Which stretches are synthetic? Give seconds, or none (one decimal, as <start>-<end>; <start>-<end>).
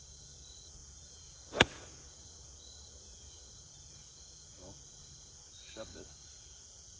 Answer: 0.0-7.0